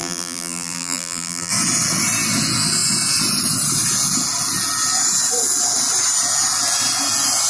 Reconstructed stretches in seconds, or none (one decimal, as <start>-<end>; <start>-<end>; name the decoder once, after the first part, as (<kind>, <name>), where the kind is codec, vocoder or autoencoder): 0.0-1.5 (vocoder, BigVGAN v2)

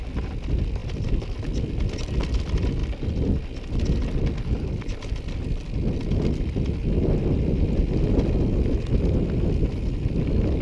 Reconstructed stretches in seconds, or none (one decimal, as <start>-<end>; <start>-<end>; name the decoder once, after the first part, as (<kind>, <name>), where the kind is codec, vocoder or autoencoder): none

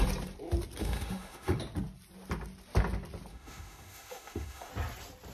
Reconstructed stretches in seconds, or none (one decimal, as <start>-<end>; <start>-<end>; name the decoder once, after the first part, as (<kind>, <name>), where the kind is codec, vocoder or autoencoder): 0.8-1.6 (autoencoder, DAC-VAE); 3.3-4.7

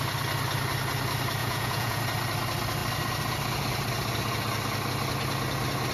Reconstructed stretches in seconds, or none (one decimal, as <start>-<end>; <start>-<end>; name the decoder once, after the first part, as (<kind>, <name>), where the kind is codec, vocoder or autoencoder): 1.4-2.0 (vocoder, Vocos)

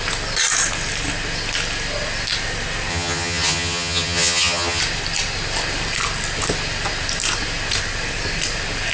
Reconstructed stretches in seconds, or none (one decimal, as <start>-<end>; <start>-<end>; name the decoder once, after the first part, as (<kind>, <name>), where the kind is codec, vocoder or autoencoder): 2.9-4.8 (vocoder, HiFi-GAN)

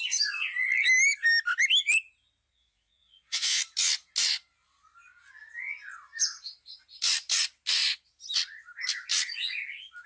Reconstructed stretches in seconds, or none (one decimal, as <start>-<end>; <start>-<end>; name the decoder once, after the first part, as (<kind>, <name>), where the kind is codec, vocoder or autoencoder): 2.5-3.6 (vocoder, Vocos)

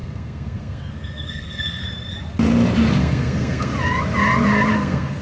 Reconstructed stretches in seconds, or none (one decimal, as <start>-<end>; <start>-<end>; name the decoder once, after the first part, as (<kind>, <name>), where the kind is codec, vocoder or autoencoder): 0.0-1.8 (codec, SNAC); 3.0-3.7; 4.7-5.2

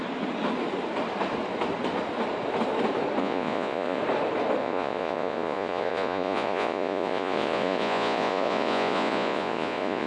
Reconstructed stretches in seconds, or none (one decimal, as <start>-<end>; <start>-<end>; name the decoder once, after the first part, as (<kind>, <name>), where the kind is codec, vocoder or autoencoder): 3.2-4.0 (vocoder, Vocos); 4.6-10.1